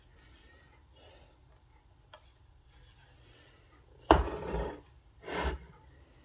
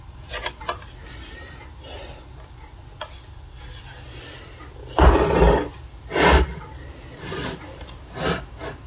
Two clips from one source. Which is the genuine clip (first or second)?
second